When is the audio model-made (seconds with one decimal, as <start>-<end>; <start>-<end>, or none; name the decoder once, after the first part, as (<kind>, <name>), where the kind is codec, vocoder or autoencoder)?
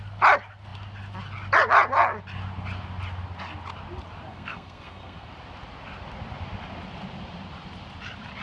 4.3-5.3 (codec, SNAC)